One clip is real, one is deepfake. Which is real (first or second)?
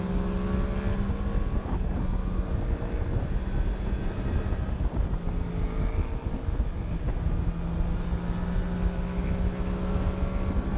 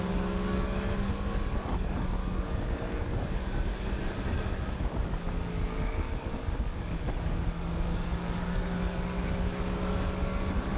first